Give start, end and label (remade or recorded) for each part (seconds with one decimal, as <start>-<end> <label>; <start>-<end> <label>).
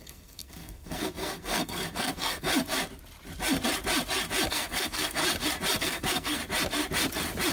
0.0-2.5 remade; 2.5-4.5 recorded; 4.5-5.2 remade; 5.2-5.8 recorded; 5.8-6.4 remade; 6.4-7.5 recorded